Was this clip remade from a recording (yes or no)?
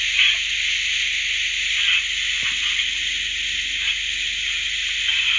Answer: no